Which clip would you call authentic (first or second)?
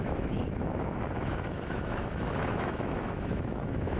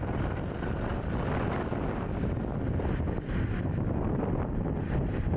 second